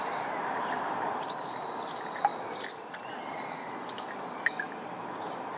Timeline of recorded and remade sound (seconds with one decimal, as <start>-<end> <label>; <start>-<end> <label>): 0.0-5.6 recorded